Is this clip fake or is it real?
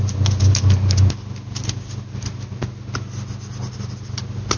real